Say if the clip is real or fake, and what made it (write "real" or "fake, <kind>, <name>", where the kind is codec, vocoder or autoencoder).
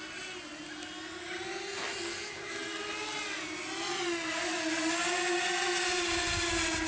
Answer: real